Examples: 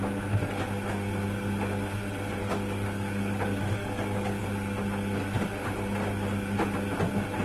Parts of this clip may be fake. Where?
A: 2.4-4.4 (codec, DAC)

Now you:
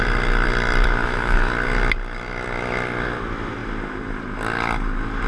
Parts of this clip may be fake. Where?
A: 1.0-1.5 (autoencoder, DAC-VAE)

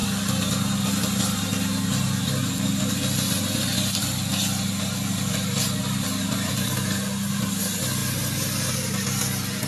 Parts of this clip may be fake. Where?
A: none

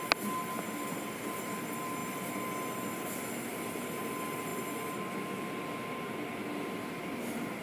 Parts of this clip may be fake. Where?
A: none